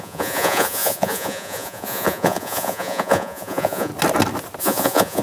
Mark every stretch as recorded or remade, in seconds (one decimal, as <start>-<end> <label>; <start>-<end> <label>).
0.0-3.9 remade; 3.9-4.6 recorded; 4.6-5.2 remade